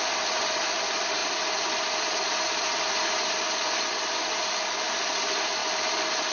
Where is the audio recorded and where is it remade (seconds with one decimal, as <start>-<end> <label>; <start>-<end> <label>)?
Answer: 0.0-1.2 remade; 1.2-5.0 recorded; 5.0-6.3 remade